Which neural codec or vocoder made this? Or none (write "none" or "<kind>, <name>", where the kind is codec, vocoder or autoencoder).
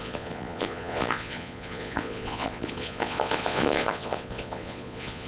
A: vocoder, Vocos